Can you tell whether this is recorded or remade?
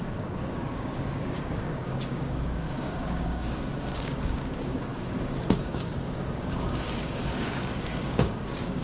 remade